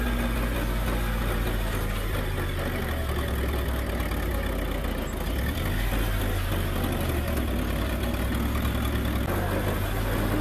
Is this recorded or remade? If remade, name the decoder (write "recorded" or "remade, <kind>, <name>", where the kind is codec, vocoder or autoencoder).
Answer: recorded